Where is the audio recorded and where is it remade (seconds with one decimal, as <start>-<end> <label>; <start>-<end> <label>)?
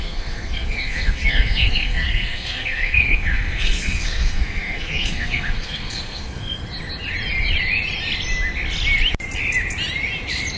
0.0-6.6 remade; 6.6-10.6 recorded